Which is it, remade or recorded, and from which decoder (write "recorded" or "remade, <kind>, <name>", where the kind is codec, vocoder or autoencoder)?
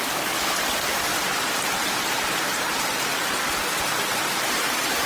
recorded